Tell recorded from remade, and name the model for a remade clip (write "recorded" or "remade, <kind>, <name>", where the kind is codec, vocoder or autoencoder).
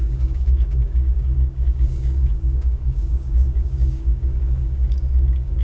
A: remade, codec, DAC